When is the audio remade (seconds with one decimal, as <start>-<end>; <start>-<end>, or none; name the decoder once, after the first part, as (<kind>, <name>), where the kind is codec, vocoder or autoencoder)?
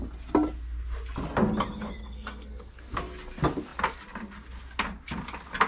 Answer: 2.0-2.8 (codec, SNAC)